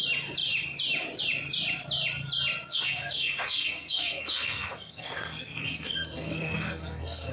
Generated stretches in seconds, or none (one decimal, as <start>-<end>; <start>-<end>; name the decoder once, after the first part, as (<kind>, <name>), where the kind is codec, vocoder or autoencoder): 2.7-7.3 (codec, SNAC)